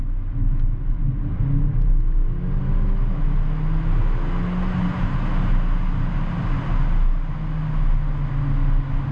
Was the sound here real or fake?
real